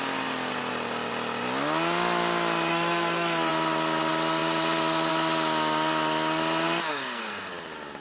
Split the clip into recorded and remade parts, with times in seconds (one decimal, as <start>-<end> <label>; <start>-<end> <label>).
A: 0.0-2.7 recorded; 2.7-3.5 remade; 3.5-6.9 recorded; 6.9-7.5 remade; 7.5-8.0 recorded